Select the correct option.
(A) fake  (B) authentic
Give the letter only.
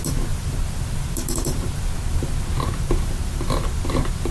B